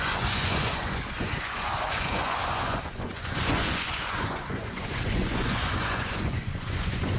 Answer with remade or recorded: remade